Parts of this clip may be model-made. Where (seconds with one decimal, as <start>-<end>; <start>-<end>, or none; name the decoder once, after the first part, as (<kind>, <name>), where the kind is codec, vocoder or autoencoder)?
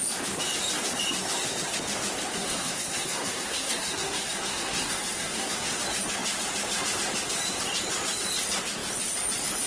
2.3-5.8 (codec, SNAC)